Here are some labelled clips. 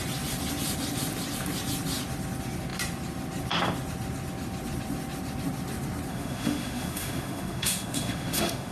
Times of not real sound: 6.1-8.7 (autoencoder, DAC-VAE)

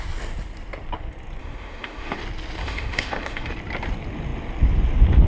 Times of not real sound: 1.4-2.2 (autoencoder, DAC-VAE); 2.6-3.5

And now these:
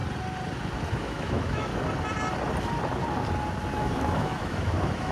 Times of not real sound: 0.9-1.7 (autoencoder, DAC-VAE); 3.8-5.1

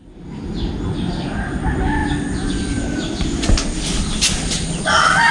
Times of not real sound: none

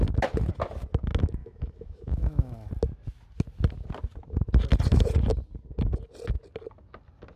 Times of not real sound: 1.4-2.7 (autoencoder, DAC-VAE)

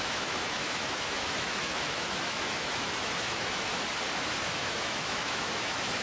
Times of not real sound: 0.0-3.7 (autoencoder, DAC-VAE); 4.4-6.0

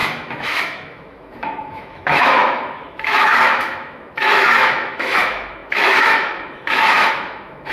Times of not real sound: 0.0-7.7 (autoencoder, DAC-VAE)